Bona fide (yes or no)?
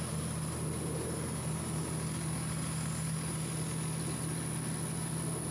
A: yes